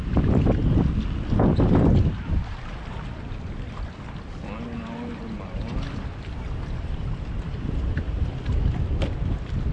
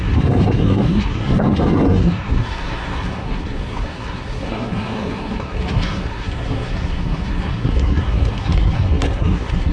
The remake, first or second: second